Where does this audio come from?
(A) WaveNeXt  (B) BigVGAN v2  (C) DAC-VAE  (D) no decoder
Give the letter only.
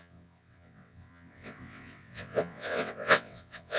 A